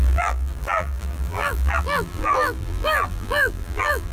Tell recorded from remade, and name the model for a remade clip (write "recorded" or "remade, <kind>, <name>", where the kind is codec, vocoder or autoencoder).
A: remade, vocoder, BigVGAN v2